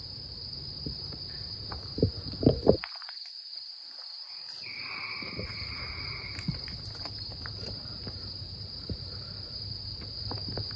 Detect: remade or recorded remade